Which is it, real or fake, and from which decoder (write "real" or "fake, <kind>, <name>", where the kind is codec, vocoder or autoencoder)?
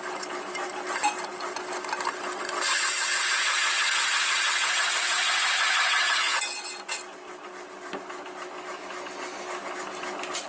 real